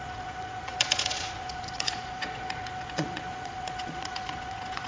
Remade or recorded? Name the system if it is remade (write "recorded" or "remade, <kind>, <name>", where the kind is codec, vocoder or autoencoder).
remade, vocoder, Vocos